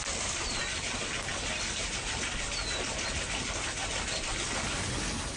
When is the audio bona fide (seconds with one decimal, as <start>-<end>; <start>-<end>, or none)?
0.0-5.4